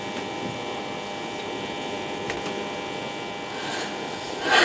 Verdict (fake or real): real